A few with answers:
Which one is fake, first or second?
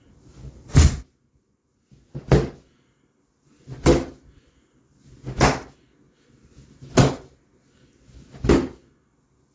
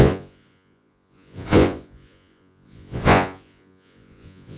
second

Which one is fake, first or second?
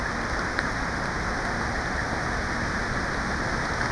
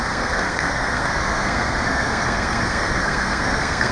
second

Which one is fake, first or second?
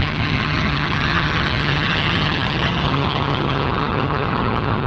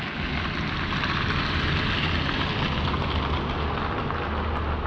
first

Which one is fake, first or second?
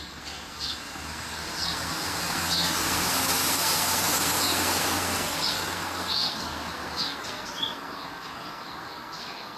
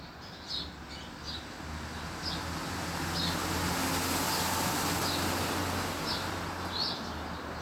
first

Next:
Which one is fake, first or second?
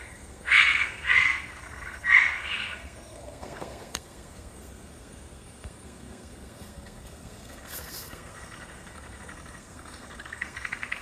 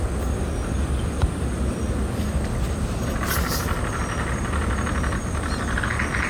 first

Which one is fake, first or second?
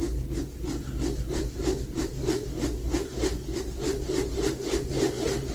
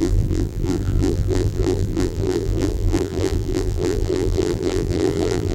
second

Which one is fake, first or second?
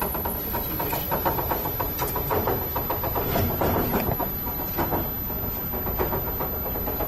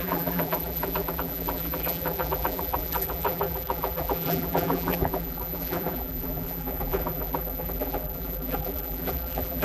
second